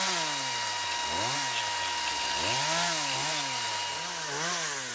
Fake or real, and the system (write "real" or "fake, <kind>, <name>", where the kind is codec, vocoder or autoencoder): real